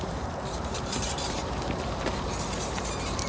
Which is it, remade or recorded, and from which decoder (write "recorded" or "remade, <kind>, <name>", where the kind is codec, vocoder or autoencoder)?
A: remade, vocoder, BigVGAN v2